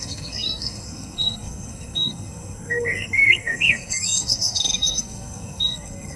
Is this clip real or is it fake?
fake